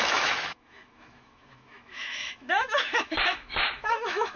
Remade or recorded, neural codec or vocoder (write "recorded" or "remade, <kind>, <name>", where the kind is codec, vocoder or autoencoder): remade, autoencoder, DAC-VAE